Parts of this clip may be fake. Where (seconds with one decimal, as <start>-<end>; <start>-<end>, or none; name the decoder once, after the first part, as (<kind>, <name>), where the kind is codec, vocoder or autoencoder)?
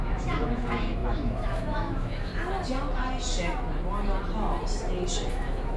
0.0-2.3 (autoencoder, DAC-VAE); 5.3-5.8